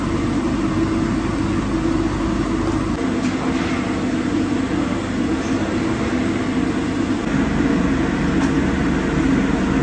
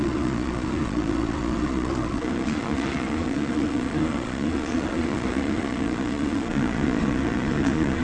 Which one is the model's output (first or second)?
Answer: second